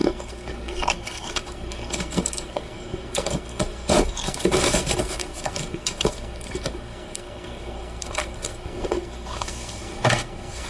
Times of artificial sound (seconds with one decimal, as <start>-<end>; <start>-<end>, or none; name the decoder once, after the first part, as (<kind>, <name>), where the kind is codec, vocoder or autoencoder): 0.0-10.7 (codec, SNAC)